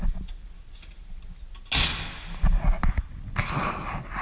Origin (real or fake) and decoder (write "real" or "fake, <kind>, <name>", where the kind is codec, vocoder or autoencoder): real